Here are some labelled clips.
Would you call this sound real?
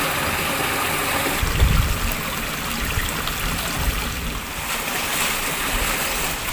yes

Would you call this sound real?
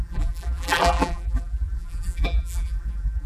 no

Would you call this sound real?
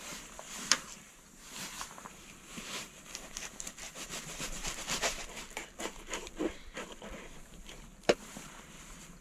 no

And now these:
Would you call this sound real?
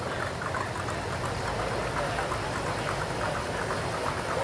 yes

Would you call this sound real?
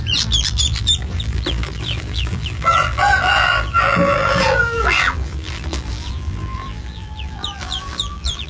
no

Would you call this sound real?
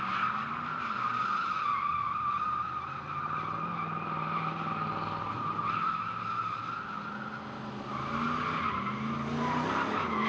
yes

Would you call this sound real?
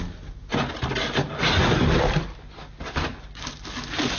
yes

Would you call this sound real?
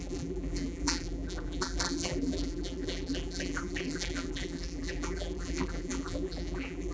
no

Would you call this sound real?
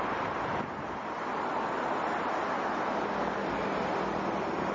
yes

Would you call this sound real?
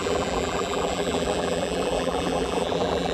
no